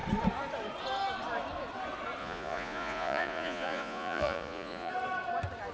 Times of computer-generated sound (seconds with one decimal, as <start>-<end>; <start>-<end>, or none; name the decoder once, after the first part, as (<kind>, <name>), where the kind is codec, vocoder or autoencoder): 2.2-4.9 (vocoder, Vocos)

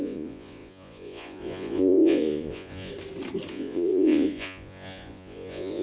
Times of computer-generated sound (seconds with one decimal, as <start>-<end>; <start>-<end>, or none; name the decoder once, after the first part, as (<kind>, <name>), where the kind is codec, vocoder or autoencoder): 0.0-2.9 (vocoder, Vocos); 3.5-5.8

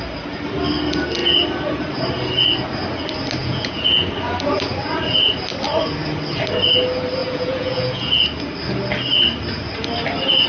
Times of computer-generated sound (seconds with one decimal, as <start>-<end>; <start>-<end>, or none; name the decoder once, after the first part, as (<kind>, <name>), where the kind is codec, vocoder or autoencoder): 3.4-4.1 (vocoder, Vocos); 7.2-8.2

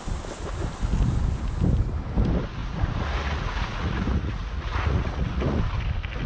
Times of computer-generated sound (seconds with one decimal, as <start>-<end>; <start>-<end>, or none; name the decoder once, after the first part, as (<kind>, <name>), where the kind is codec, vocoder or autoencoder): 2.6-5.6 (vocoder, Vocos)

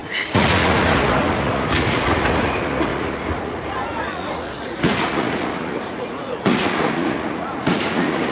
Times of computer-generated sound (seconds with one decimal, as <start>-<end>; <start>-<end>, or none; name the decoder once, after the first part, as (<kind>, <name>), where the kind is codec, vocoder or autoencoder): 0.0-8.3 (vocoder, Vocos)

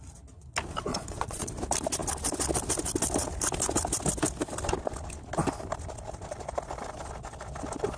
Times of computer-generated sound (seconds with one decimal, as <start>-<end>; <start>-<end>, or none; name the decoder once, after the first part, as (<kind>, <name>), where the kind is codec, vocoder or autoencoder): 0.9-1.5 (vocoder, Vocos)